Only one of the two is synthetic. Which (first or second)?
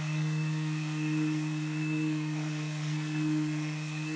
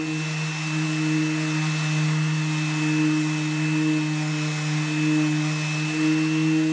first